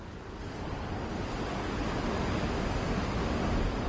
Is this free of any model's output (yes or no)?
yes